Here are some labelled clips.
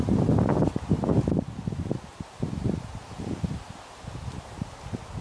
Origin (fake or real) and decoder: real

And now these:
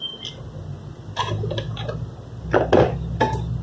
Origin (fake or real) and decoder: real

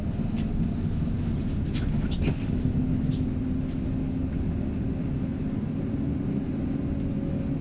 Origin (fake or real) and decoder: real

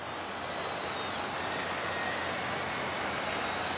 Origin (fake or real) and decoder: real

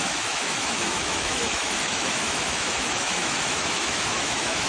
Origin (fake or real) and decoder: fake, autoencoder, DAC-VAE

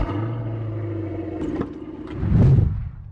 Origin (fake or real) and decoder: real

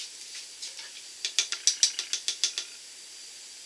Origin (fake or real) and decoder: real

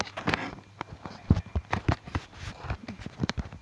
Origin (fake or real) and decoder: real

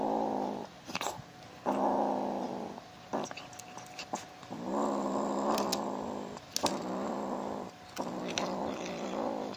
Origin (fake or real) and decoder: real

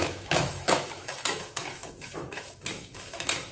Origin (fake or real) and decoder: fake, autoencoder, DAC-VAE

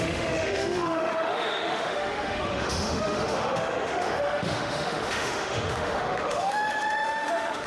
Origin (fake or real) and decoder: fake, autoencoder, DAC-VAE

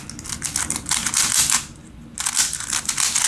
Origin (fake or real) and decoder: real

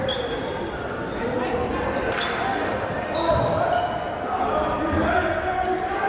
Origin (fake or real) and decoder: real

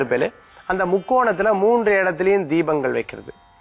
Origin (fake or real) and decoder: real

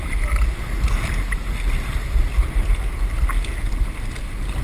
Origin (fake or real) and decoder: real